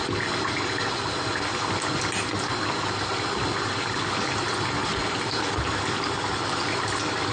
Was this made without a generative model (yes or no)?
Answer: yes